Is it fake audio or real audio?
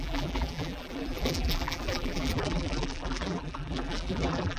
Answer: fake